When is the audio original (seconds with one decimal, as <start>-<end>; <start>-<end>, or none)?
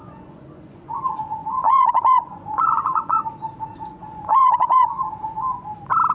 3.2-3.7; 5.1-6.1